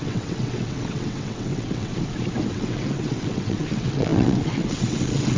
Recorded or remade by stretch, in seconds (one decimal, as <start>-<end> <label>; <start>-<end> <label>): 0.0-1.9 remade; 1.9-2.5 recorded; 2.5-5.4 remade